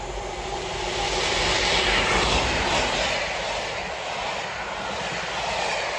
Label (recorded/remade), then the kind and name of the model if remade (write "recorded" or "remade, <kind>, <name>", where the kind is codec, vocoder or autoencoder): recorded